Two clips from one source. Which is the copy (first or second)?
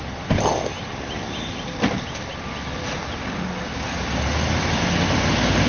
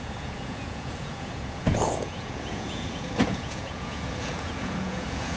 second